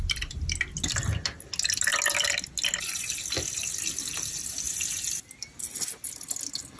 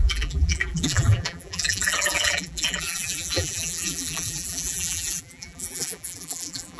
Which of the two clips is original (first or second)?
first